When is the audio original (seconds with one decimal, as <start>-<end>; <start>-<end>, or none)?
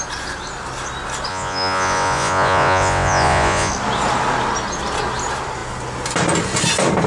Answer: 0.0-1.3; 3.7-7.1